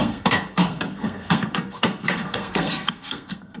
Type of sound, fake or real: fake